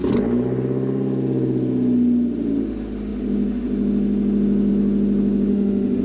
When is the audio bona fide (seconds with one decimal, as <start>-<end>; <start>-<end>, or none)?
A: 0.0-5.5